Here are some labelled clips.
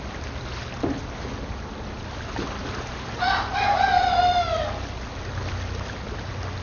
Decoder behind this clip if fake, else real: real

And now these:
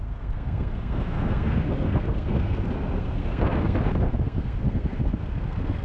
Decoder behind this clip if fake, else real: fake, codec, SNAC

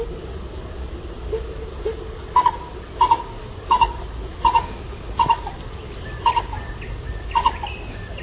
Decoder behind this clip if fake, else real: real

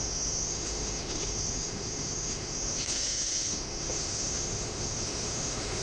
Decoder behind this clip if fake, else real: fake, autoencoder, DAC-VAE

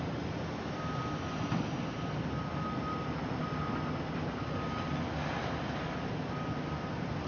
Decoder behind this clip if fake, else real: real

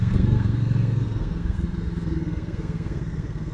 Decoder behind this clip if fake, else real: fake, codec, SNAC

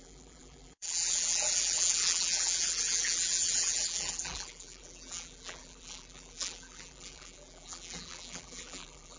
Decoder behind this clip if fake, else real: fake, vocoder, BigVGAN v2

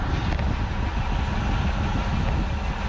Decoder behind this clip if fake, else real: real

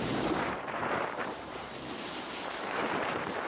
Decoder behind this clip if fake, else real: fake, vocoder, BigVGAN v2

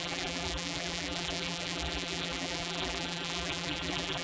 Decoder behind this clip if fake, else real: fake, vocoder, BigVGAN v2